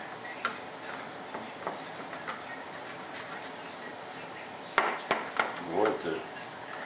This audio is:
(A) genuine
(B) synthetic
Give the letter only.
A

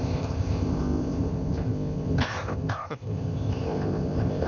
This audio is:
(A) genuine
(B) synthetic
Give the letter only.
B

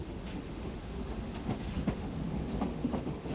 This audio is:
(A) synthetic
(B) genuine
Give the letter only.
A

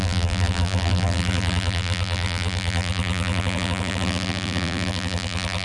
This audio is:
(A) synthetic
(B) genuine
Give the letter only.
A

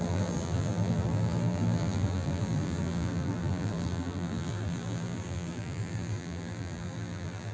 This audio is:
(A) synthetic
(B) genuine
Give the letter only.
A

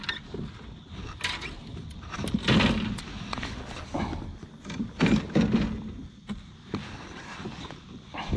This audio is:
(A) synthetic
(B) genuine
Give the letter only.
B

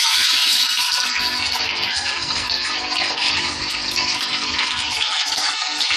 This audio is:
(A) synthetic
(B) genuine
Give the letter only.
A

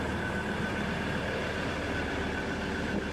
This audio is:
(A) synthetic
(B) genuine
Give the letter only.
A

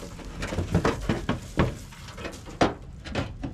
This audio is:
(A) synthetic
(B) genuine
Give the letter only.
B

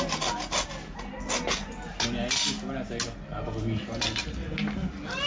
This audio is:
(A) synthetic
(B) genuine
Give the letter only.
B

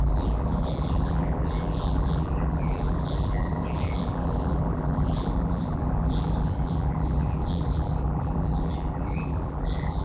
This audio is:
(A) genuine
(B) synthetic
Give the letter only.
B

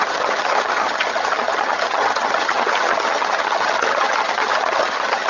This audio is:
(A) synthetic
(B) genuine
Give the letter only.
A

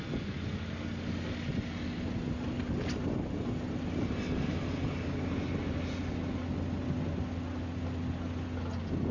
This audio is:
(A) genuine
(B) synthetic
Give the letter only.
A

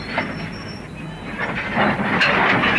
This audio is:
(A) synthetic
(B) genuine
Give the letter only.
B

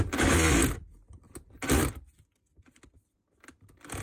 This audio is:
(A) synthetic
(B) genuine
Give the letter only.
B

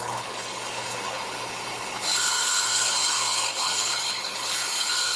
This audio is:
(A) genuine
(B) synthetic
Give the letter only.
B